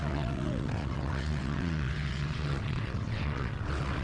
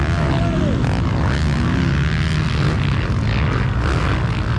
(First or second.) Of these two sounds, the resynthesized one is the first